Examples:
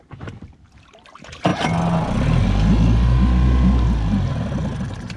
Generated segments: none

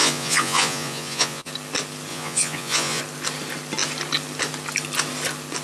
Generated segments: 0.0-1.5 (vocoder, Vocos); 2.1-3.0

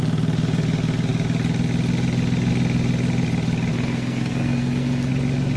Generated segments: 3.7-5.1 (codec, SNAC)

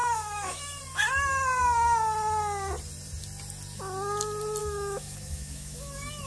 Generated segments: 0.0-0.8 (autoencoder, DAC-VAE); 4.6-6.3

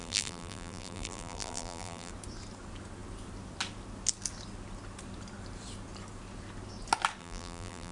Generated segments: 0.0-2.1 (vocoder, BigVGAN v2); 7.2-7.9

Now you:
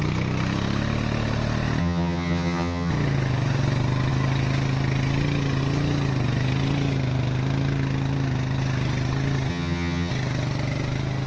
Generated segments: 1.8-2.9 (vocoder, HiFi-GAN); 9.5-10.1

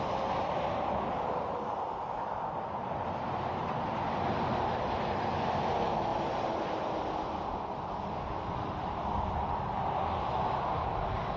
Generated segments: none